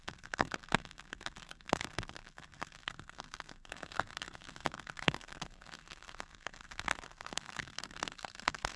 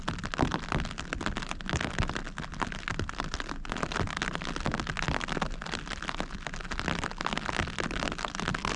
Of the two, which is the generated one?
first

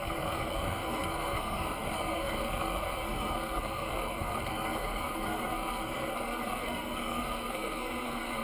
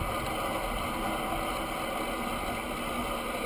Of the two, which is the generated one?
first